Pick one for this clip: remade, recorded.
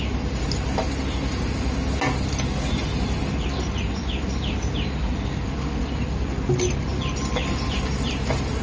recorded